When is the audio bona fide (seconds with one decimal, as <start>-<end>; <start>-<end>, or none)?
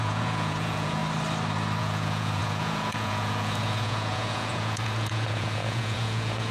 1.0-1.8